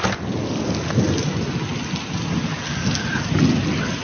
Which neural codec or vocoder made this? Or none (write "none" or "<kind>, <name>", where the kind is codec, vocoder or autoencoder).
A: none